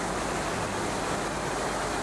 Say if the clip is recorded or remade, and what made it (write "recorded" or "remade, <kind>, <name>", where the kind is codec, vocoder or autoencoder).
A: recorded